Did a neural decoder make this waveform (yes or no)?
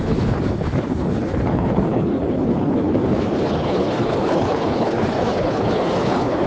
yes